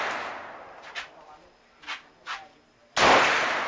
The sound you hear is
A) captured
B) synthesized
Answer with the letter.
A